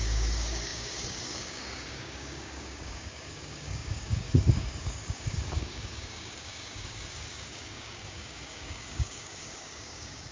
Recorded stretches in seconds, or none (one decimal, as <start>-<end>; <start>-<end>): none